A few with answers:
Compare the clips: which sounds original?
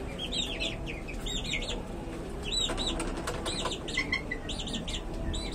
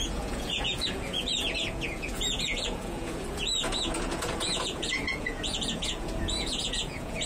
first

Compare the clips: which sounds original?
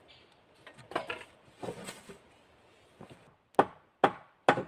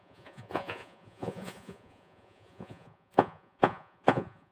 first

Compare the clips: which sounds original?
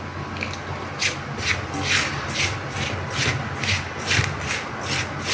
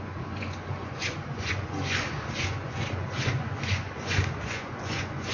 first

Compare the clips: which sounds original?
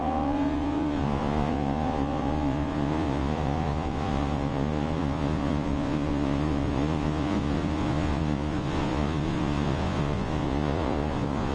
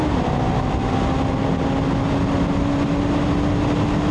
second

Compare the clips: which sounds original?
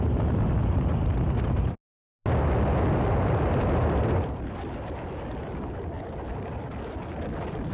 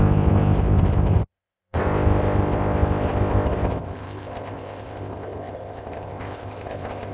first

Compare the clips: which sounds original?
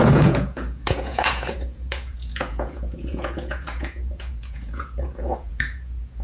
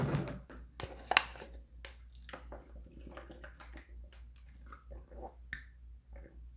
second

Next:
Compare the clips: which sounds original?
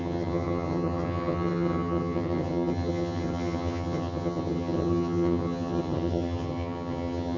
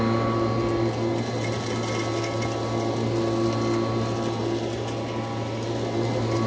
second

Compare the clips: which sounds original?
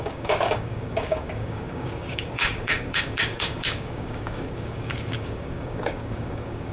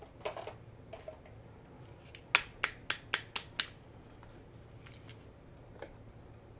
second